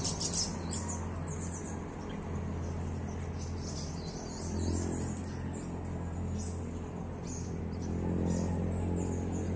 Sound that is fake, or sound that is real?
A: real